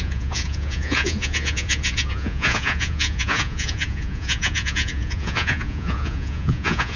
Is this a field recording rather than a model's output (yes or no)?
no